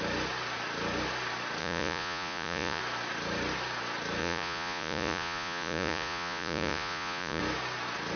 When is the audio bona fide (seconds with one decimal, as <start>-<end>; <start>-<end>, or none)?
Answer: 0.0-1.6; 2.8-4.2; 7.4-8.2